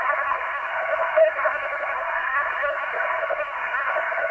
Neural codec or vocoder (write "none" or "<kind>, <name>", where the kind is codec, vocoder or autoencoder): codec, SNAC